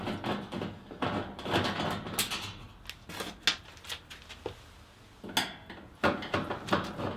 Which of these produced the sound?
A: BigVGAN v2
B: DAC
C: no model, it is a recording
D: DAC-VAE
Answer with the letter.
C